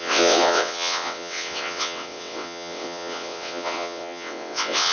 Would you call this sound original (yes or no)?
no